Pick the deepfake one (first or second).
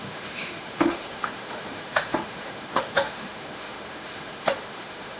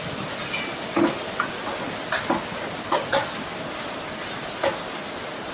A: first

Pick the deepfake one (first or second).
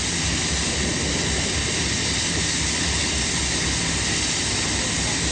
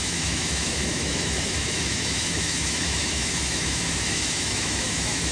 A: second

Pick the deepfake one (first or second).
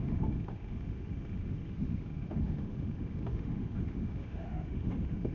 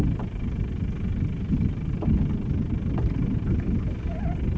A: first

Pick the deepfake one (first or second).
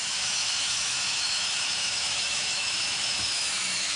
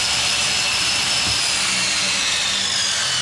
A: first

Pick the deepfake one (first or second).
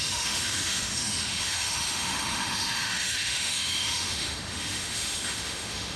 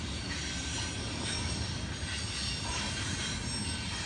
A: first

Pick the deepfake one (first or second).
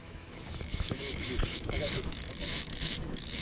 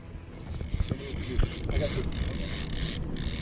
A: first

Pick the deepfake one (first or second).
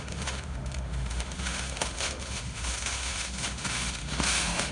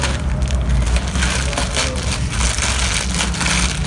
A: first